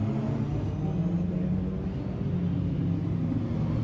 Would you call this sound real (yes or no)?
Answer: yes